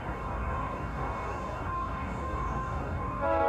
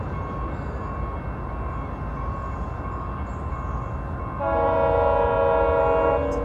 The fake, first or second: first